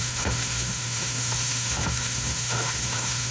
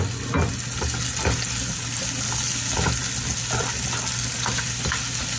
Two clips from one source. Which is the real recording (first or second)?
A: second